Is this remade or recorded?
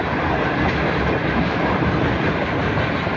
recorded